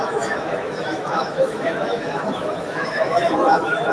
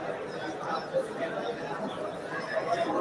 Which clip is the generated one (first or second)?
first